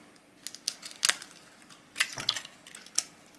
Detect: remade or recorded recorded